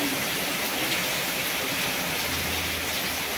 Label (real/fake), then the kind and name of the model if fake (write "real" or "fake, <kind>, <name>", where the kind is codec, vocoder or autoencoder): real